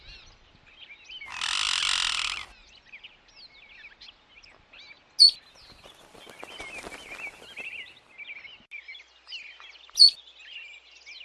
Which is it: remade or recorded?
recorded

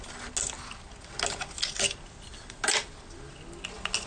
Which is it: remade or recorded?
recorded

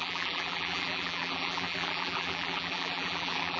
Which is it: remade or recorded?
remade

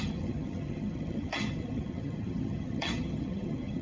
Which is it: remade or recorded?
remade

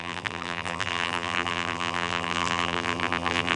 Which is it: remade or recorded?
remade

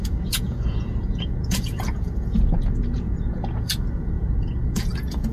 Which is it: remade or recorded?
remade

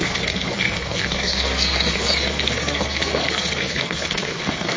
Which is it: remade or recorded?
remade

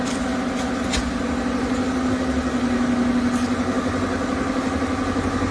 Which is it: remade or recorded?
recorded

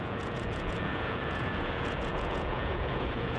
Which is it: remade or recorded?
remade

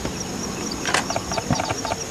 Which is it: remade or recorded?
recorded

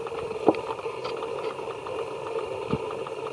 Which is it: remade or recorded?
recorded